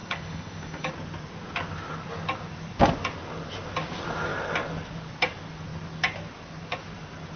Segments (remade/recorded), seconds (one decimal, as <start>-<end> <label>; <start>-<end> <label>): 0.0-0.9 remade; 0.9-7.4 recorded